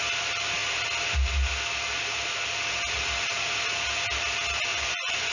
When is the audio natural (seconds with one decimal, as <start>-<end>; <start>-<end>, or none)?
0.0-4.7